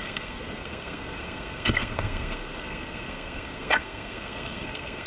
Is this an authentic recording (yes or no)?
no